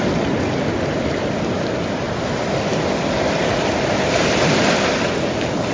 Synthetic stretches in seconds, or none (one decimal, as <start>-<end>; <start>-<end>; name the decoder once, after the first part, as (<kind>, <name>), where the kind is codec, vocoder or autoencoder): none